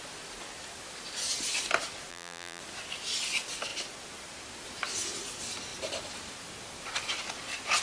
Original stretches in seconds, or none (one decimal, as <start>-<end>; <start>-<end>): 0.0-2.1; 2.6-7.8